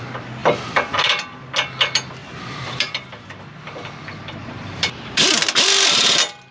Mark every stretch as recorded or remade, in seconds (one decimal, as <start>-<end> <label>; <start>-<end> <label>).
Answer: 0.0-0.4 recorded; 0.4-1.3 remade; 1.3-2.2 recorded; 2.2-2.9 remade; 2.9-4.4 recorded; 4.4-5.2 remade; 5.2-6.5 recorded